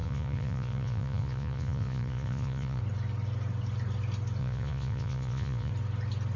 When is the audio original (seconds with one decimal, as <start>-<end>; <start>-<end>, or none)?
2.8-4.4; 5.7-6.4